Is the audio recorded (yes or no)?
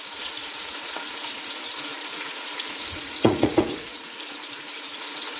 no